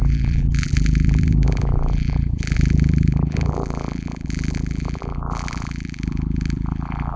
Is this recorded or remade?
remade